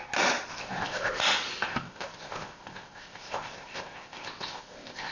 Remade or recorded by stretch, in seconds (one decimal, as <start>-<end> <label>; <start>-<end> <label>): 0.0-0.5 recorded; 0.5-1.2 remade; 1.2-1.7 recorded; 1.7-5.1 remade